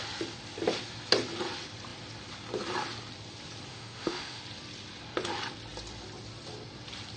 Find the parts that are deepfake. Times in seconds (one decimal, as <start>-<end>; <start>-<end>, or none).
3.7-4.4